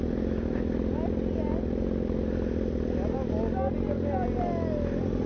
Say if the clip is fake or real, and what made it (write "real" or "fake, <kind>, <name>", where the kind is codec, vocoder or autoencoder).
real